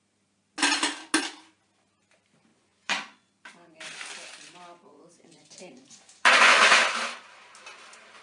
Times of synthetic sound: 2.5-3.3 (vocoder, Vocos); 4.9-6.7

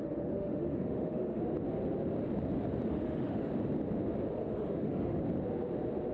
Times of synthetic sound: 0.0-1.4 (autoencoder, DAC-VAE); 2.9-3.5; 4.4-5.2

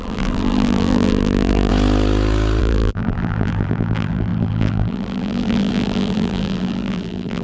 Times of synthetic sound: 0.0-1.7 (vocoder, BigVGAN v2); 2.6-7.4